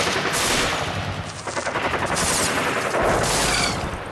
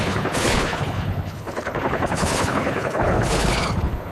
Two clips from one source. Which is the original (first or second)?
first